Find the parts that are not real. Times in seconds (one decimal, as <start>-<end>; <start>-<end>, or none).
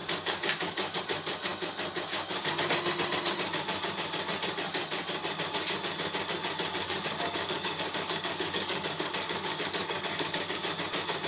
0.0-1.0; 6.7-10.6